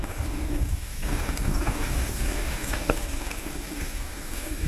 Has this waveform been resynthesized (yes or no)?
yes